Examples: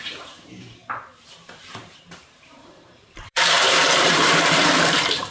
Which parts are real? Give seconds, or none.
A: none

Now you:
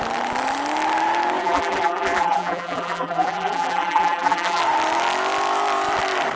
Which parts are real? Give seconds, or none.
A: 0.0-1.4; 4.6-6.4

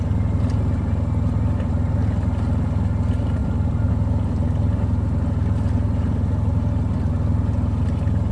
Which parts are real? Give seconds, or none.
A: 0.0-3.4; 3.9-8.3